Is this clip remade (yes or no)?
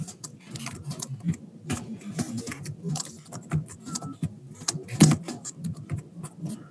no